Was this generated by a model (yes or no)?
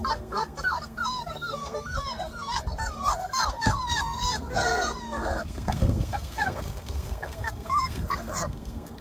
yes